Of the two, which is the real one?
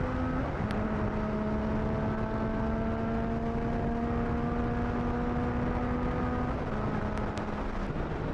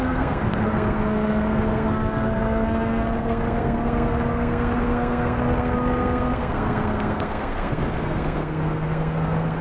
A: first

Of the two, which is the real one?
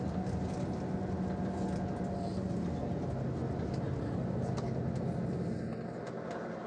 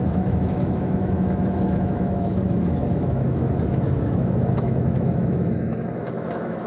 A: first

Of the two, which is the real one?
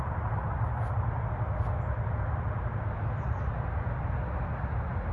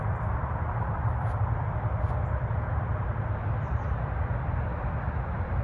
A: first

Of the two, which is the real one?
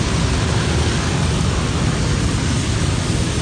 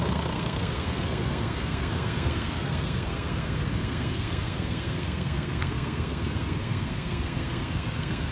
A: first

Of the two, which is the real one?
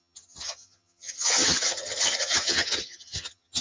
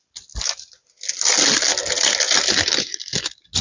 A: second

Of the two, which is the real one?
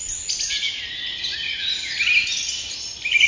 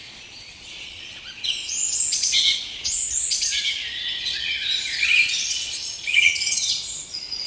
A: first